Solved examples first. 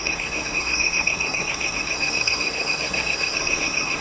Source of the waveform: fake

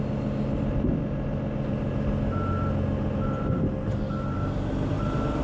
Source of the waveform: real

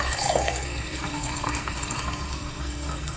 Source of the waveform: fake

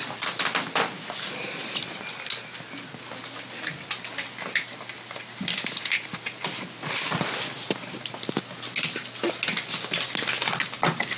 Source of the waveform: real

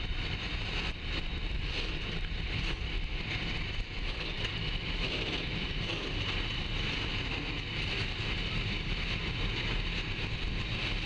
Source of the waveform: real